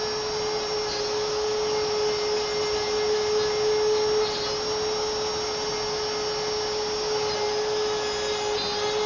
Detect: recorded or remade recorded